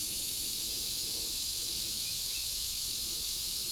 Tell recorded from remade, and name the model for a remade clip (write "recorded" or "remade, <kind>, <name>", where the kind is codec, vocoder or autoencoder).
remade, autoencoder, DAC-VAE